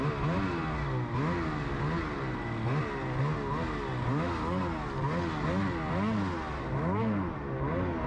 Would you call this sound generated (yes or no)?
no